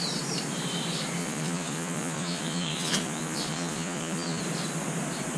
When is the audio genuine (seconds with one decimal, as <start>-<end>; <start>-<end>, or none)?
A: 0.0-1.2; 4.4-5.4